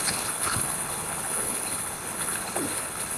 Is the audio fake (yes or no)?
yes